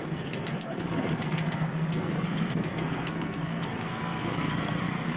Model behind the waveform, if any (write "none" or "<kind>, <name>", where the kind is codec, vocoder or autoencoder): codec, SNAC